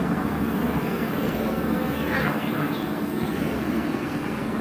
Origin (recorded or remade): remade